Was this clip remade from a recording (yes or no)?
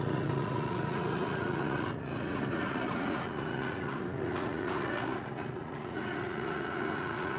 yes